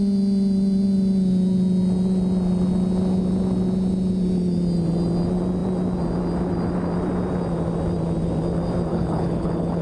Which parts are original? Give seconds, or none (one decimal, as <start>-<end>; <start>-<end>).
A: 0.0-8.9